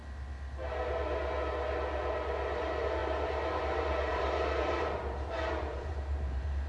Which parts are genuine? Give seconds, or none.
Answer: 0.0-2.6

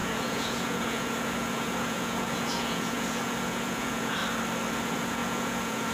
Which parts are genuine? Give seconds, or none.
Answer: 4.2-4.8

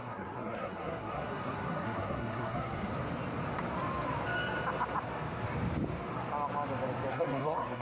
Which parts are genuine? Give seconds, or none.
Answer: 2.9-7.1

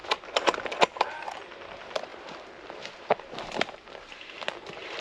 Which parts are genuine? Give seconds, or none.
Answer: 0.0-5.0